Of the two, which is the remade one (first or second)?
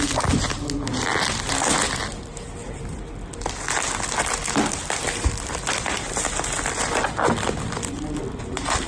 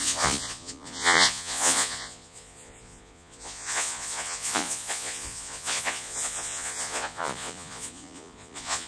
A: second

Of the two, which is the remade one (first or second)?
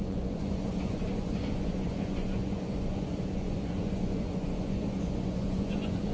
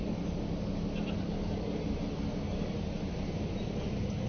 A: first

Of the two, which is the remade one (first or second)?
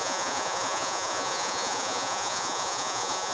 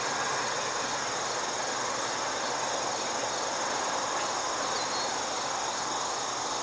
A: first